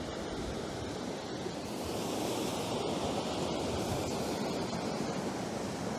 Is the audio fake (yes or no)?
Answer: no